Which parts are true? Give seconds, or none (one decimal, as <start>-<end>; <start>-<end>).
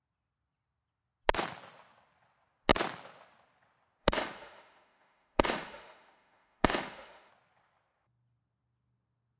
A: 0.0-4.0; 7.3-9.4